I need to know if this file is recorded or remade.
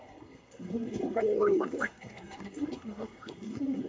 remade